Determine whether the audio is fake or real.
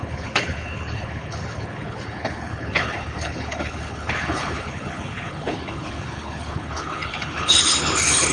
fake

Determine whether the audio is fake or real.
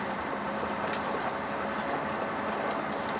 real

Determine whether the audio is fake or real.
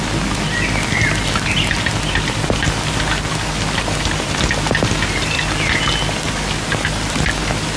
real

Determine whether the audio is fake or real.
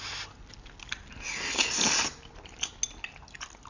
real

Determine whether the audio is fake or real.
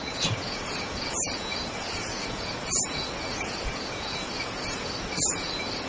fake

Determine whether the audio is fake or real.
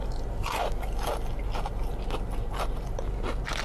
real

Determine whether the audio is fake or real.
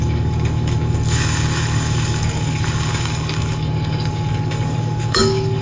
fake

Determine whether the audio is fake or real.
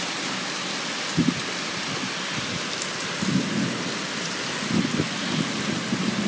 real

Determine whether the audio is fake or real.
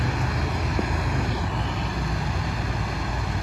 real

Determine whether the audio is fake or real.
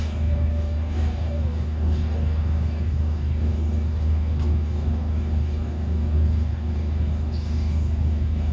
fake